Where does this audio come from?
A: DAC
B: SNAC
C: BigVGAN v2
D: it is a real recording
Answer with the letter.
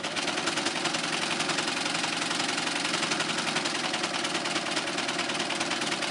D